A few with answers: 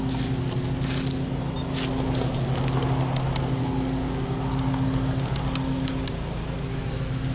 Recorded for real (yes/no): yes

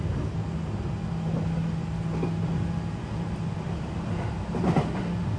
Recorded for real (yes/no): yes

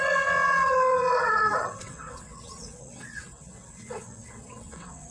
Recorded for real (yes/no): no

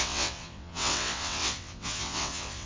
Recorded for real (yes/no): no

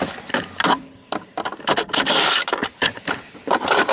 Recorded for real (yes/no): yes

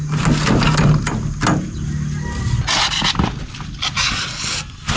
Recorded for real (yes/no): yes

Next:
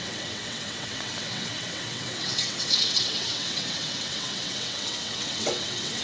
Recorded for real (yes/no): no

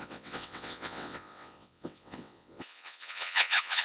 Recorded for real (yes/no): no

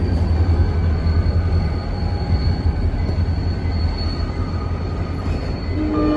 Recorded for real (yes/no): yes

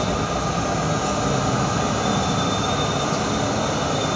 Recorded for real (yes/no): yes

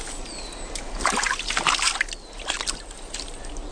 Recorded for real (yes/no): yes